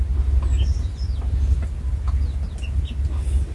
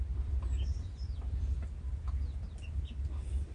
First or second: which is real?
first